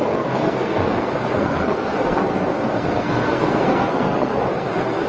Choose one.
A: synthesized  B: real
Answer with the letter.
A